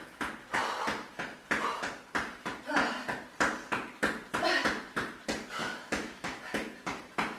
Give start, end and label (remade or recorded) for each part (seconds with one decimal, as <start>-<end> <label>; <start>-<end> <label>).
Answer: 0.0-5.6 recorded; 5.6-6.4 remade; 6.4-7.4 recorded